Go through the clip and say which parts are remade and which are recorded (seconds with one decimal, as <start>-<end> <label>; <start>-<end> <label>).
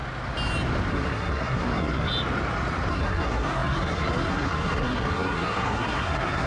0.0-0.9 recorded; 0.9-2.1 remade; 2.1-2.9 recorded; 2.9-6.5 remade